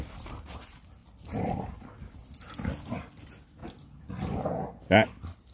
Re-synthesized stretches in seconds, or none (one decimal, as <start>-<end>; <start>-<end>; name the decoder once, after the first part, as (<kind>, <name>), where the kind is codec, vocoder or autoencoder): none